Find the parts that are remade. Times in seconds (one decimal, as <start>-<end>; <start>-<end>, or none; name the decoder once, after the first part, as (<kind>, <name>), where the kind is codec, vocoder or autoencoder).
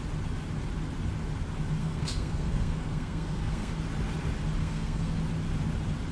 1.8-3.7 (codec, SNAC); 4.6-5.2